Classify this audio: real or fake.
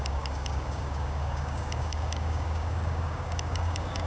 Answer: fake